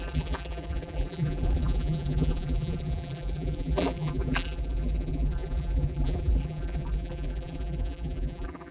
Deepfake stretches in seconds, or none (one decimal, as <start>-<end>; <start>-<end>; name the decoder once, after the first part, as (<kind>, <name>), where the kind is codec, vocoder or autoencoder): 0.0-8.7 (vocoder, BigVGAN v2)